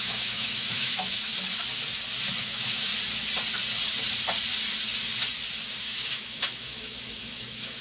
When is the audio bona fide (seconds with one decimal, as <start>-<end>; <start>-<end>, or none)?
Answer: 1.3-2.4; 2.9-5.8